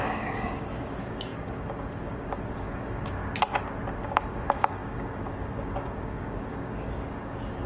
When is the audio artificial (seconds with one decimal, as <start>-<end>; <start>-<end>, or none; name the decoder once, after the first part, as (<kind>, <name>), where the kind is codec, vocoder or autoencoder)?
0.0-3.2 (codec, DAC); 4.0-7.7